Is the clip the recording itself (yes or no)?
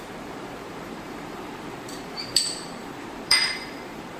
no